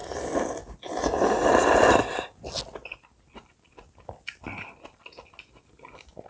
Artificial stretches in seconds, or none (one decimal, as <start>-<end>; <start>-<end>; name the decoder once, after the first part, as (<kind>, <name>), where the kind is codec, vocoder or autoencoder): none